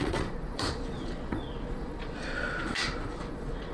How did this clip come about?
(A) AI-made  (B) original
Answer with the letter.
A